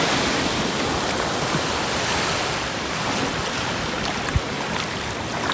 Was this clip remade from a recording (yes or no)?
no